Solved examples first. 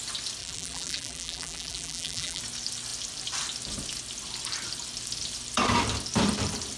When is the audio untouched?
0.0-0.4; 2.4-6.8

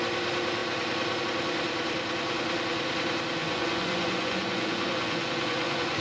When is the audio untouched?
0.0-3.4